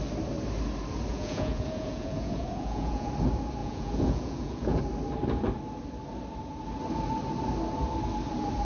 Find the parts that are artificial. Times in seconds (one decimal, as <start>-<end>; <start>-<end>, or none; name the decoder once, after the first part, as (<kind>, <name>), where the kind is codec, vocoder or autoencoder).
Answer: 1.1-3.1 (vocoder, Vocos); 3.6-4.8